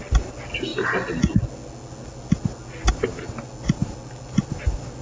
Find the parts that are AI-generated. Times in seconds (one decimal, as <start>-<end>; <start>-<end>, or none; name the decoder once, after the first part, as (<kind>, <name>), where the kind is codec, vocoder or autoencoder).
none